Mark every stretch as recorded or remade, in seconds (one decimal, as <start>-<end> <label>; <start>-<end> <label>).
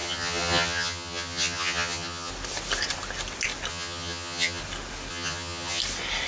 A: 0.0-2.3 remade; 2.3-3.7 recorded; 3.7-4.6 remade; 4.6-5.1 recorded; 5.1-5.8 remade; 5.8-6.3 recorded